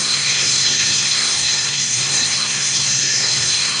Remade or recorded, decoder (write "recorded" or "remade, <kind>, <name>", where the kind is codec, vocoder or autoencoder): remade, codec, SNAC